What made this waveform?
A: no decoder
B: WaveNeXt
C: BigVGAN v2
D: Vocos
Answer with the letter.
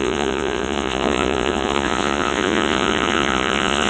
D